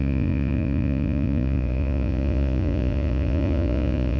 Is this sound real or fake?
fake